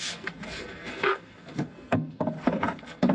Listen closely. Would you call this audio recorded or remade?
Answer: remade